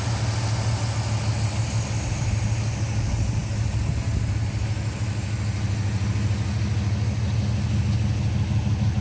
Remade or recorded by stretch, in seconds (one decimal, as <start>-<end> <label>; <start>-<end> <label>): 0.0-9.0 recorded